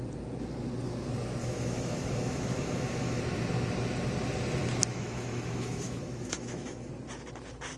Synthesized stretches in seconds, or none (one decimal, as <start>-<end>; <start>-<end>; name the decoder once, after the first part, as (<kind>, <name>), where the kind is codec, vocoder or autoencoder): 1.4-3.2 (autoencoder, DAC-VAE); 4.9-6.9